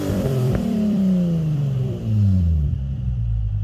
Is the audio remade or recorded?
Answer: remade